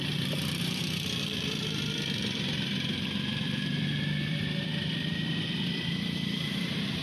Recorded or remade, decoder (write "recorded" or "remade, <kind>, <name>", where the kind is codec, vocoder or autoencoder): remade, vocoder, BigVGAN v2